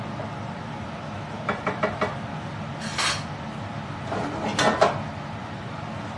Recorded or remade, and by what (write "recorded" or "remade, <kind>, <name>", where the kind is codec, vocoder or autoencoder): recorded